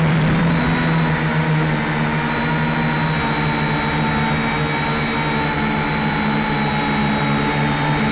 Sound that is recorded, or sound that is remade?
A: recorded